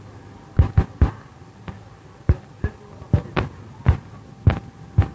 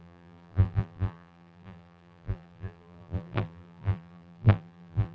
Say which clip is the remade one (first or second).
second